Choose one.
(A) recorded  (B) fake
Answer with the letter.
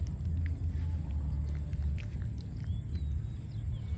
A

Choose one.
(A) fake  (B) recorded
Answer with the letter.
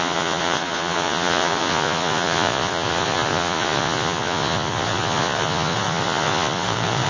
A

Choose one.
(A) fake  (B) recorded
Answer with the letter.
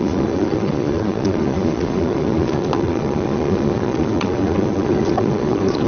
A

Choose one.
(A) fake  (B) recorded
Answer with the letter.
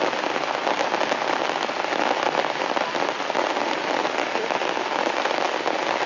B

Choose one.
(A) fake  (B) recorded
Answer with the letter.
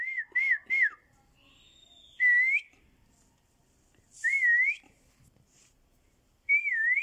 B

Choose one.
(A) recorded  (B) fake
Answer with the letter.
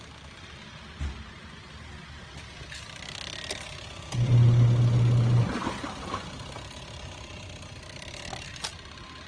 A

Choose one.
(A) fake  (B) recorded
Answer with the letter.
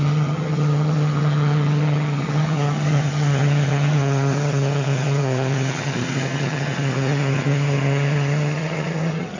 A